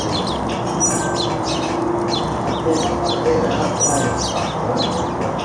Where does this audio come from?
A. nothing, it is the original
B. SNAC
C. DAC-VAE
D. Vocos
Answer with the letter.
A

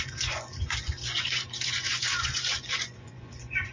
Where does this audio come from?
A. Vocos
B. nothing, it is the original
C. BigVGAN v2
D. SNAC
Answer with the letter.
A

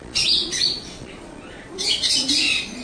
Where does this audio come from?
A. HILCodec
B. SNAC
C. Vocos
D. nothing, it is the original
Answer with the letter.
C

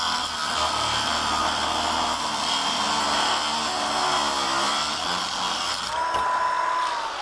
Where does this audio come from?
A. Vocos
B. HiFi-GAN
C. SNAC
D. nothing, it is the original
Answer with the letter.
D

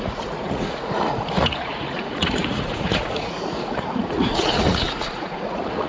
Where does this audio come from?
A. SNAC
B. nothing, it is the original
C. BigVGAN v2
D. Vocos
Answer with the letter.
D